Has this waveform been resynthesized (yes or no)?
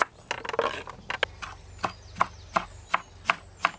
no